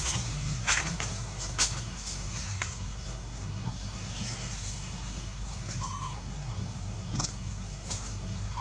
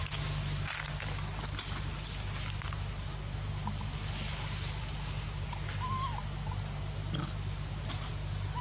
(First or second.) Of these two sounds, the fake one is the first